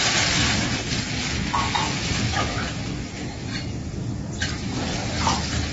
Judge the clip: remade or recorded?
recorded